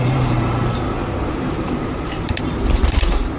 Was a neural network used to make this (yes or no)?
yes